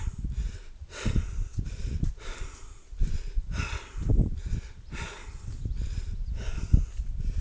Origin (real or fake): real